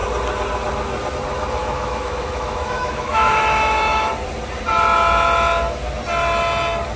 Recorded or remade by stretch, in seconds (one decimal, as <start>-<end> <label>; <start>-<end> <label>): 0.0-1.6 recorded; 1.6-4.1 remade; 4.1-7.0 recorded